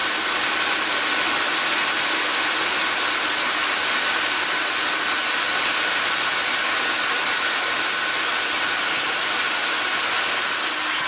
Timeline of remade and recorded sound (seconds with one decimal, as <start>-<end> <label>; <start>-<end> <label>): 0.0-11.1 recorded